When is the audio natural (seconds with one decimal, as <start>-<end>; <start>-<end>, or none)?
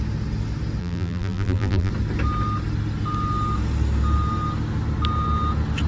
0.0-0.8; 1.9-5.9